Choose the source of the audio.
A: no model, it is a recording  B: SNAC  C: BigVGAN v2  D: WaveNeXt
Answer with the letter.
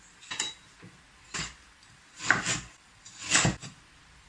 A